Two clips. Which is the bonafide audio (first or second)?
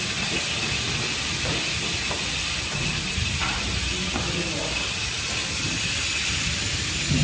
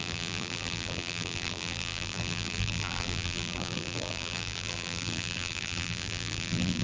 first